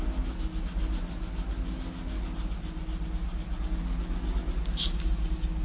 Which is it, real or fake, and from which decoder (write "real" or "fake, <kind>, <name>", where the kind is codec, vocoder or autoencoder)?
real